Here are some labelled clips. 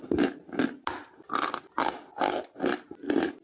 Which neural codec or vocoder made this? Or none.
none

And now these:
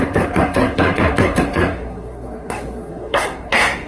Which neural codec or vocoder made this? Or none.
codec, SNAC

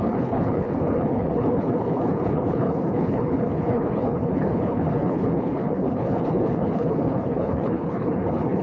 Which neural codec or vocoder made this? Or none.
codec, HILCodec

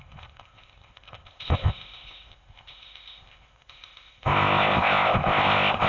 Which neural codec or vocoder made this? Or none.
codec, ZipCodec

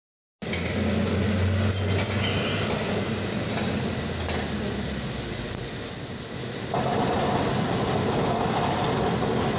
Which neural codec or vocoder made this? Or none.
none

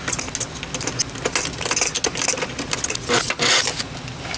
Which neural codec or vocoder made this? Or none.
none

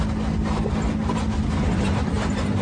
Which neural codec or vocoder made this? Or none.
none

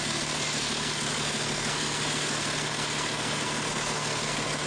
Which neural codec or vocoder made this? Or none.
codec, SNAC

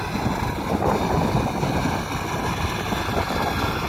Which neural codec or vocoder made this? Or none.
none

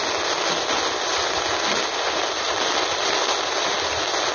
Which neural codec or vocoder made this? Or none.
none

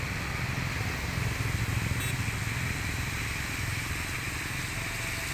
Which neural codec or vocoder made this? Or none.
none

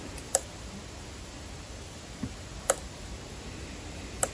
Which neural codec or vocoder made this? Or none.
none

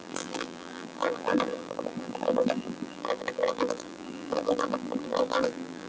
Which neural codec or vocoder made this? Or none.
vocoder, BigVGAN v2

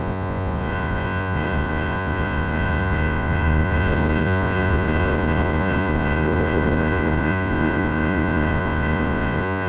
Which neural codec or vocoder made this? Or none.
vocoder, Vocos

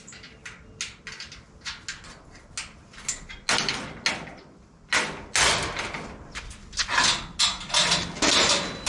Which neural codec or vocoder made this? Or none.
none